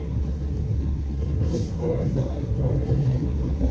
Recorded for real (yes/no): no